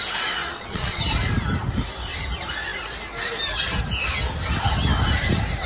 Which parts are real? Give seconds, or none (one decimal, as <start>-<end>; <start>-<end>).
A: 0.0-0.4; 1.0-5.7